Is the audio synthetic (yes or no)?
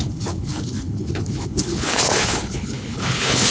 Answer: yes